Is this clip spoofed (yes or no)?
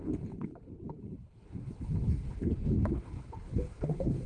yes